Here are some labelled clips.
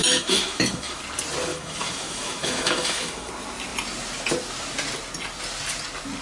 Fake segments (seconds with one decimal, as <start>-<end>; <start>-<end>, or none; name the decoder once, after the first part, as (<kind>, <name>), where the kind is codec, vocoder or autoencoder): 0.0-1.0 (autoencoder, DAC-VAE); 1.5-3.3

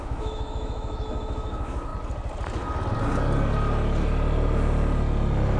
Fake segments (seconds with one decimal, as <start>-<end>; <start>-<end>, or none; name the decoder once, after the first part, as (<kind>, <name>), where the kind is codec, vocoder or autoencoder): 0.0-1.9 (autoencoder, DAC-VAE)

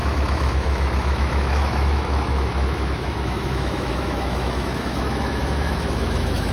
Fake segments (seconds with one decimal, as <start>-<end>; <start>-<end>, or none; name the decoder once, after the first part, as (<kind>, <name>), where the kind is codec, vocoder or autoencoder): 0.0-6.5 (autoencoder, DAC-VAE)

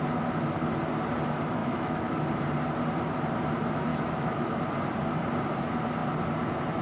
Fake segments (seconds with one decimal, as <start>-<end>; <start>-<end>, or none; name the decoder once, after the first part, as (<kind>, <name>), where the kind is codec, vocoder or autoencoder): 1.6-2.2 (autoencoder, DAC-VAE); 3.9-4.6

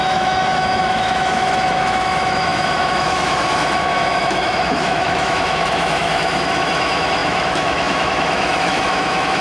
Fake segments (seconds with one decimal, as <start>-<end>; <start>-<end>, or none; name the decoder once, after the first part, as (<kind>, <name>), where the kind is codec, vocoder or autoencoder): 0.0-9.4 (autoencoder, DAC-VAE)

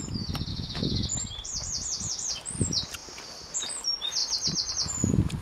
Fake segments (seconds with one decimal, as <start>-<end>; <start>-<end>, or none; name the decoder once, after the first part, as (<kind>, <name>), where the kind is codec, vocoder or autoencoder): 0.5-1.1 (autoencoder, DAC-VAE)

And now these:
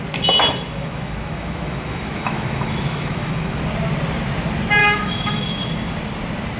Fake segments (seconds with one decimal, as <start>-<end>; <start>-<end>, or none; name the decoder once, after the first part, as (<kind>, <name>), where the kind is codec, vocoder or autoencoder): 0.8-3.6 (autoencoder, DAC-VAE); 4.8-5.6

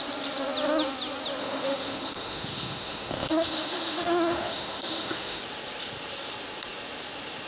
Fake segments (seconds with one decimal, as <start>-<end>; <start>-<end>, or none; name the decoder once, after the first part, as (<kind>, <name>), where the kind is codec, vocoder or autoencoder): 1.4-5.4 (autoencoder, DAC-VAE)